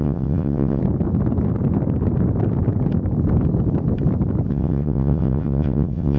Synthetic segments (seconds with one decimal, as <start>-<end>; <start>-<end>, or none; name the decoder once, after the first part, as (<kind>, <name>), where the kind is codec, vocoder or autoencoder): 0.0-0.8 (vocoder, WaveNeXt); 4.5-6.2